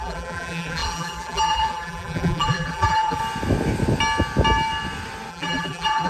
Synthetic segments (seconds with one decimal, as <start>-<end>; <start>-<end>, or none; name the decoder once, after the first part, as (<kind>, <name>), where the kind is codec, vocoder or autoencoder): 0.0-3.2 (vocoder, BigVGAN v2); 5.3-6.1